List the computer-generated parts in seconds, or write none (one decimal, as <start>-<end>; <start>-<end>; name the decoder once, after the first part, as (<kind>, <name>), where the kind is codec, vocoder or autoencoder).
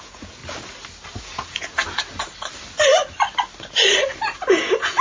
0.0-0.4 (vocoder, Vocos); 1.2-1.8; 4.5-5.0